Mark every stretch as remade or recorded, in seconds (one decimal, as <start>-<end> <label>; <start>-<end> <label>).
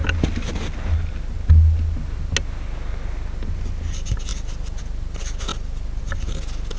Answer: 0.0-1.0 remade; 1.0-4.3 recorded; 4.3-4.8 remade; 4.8-6.8 recorded